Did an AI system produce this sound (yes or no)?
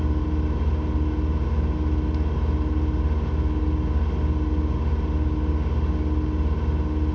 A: no